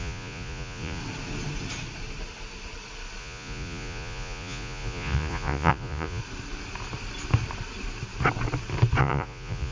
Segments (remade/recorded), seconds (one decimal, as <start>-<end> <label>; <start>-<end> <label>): 0.0-1.0 remade; 1.0-3.2 recorded; 3.2-6.2 remade; 6.2-9.0 recorded; 9.0-9.7 remade